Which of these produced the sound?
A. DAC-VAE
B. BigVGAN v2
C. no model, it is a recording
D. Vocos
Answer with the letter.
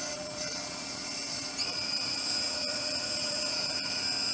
D